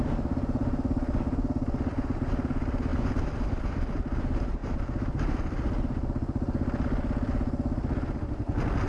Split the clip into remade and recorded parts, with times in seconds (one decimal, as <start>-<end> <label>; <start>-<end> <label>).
0.0-2.9 recorded; 2.9-4.0 remade; 4.0-4.6 recorded; 4.6-5.4 remade; 5.4-8.9 recorded